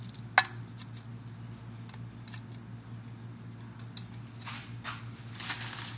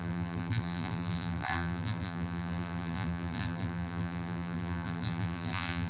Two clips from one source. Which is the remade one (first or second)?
second